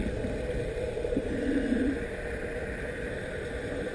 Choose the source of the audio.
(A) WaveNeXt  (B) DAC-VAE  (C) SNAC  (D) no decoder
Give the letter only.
D